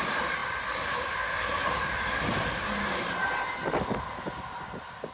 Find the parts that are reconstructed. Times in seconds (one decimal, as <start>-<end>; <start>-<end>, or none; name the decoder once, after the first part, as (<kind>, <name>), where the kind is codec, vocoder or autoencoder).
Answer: none